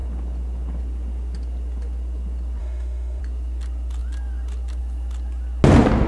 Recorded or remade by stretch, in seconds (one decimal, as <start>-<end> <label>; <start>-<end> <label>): 0.0-2.6 recorded; 2.6-3.2 remade; 3.2-6.1 recorded